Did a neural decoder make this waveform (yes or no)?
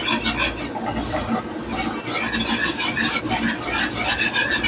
no